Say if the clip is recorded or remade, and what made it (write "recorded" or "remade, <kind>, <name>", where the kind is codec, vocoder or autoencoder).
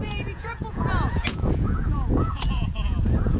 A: remade, vocoder, Vocos